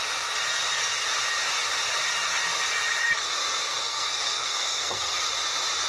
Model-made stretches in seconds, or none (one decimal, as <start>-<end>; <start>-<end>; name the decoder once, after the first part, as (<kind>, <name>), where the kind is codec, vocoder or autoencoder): 3.6-5.3 (codec, SNAC)